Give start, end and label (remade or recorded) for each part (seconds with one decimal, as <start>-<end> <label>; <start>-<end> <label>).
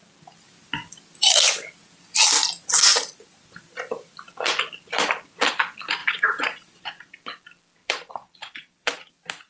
0.0-6.0 recorded; 6.0-7.1 remade; 7.1-7.8 recorded; 7.8-9.1 remade; 9.1-9.5 recorded